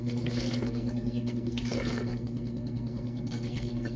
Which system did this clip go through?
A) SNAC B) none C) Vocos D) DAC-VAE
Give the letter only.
A